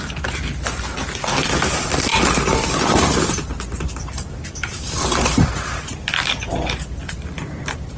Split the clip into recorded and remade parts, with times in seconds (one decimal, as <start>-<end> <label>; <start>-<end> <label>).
0.0-2.1 recorded; 2.1-5.4 remade; 5.4-8.0 recorded